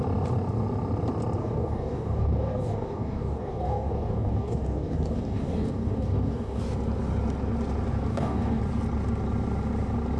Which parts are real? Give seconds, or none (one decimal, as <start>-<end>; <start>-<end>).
0.0-1.4; 6.6-8.1; 8.6-10.2